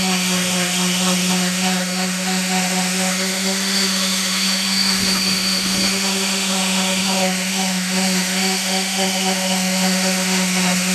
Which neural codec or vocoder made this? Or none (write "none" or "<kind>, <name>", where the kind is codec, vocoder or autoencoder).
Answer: autoencoder, DAC-VAE